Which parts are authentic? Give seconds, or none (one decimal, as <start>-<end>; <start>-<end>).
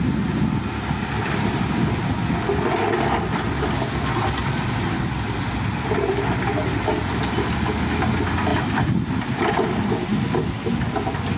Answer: 0.0-2.8; 7.5-8.5; 9.5-11.4